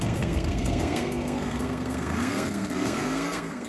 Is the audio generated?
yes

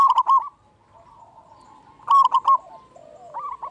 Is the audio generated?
no